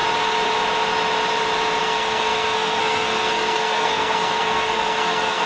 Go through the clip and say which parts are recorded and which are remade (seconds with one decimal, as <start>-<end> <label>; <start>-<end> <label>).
0.0-1.8 recorded; 1.8-5.5 remade